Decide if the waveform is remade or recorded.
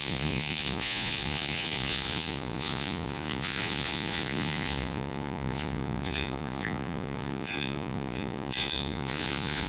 remade